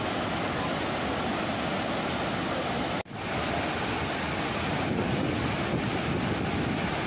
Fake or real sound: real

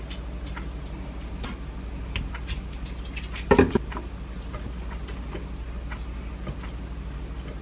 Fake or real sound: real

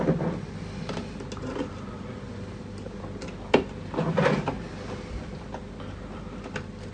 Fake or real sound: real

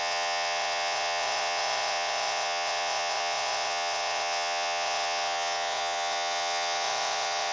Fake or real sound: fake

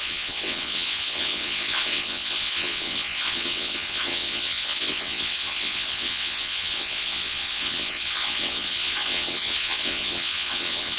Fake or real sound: fake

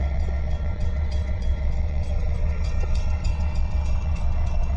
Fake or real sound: fake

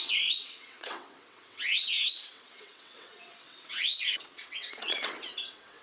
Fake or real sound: fake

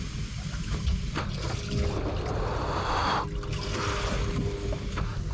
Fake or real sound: real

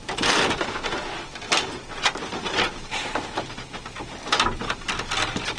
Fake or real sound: real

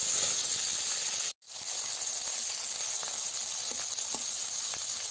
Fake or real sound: real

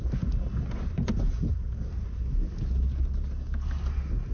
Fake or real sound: real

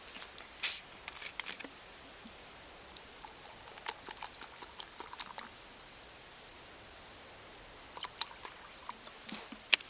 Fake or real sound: real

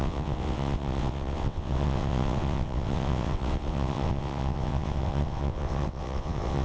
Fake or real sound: fake